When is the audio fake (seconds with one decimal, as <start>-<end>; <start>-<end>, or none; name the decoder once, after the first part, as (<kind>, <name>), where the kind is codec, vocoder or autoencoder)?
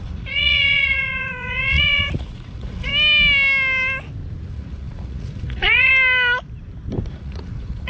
0.0-2.9 (vocoder, Vocos); 4.5-5.9; 7.1-7.9